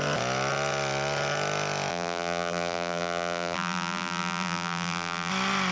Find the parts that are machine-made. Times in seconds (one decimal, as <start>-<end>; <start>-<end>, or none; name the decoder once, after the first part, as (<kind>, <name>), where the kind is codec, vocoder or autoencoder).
1.9-5.3 (vocoder, BigVGAN v2)